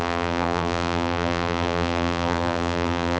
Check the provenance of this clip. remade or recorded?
remade